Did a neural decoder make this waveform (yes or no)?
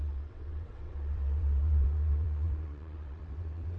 yes